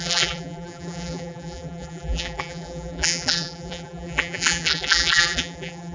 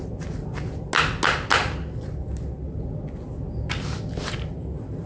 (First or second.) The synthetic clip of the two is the first